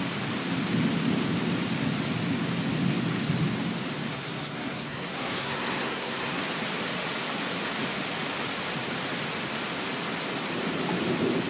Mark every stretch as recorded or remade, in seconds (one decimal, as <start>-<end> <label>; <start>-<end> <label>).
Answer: 0.0-4.1 recorded; 4.1-6.4 remade; 6.4-11.5 recorded